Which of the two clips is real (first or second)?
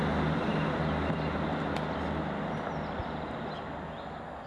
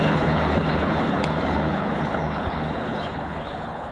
first